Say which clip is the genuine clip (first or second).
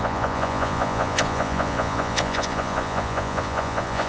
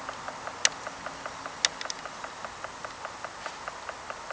second